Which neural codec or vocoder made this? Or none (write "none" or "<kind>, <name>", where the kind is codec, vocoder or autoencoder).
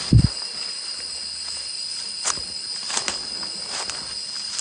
none